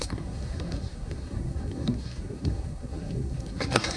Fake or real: fake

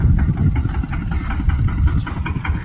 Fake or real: real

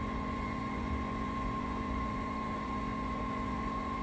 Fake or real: fake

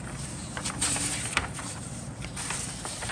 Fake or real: fake